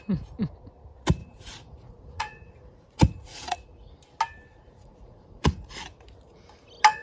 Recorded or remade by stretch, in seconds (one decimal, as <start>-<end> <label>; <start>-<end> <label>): 0.0-1.2 recorded; 1.2-3.9 remade; 3.9-4.5 recorded; 4.5-5.8 remade; 5.8-7.0 recorded